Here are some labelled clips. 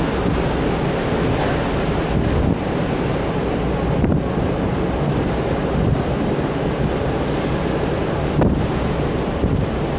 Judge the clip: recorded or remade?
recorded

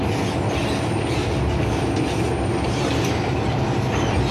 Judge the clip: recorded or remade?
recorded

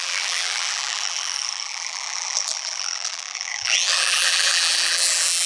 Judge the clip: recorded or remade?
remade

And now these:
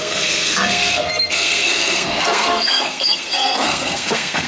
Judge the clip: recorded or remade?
remade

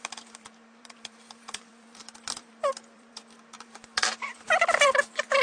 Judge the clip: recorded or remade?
remade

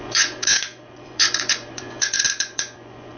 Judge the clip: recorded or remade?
remade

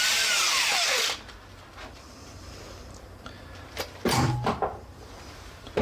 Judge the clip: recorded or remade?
remade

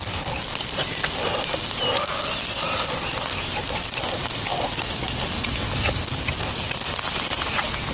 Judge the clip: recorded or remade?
recorded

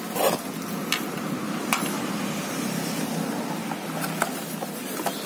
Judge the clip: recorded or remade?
recorded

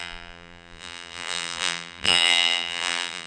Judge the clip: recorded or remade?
remade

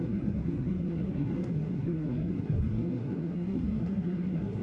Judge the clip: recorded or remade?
remade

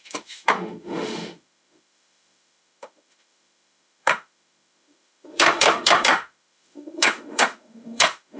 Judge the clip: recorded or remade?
remade